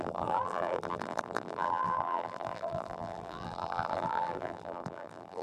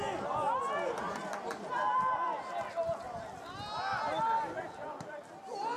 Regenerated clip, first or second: first